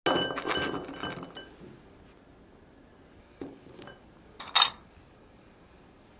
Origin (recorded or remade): recorded